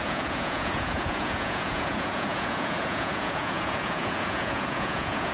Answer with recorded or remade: remade